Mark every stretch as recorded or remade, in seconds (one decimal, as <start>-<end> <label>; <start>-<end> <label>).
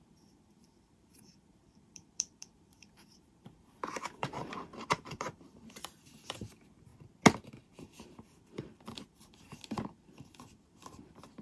0.0-6.9 remade; 6.9-7.5 recorded; 7.5-11.4 remade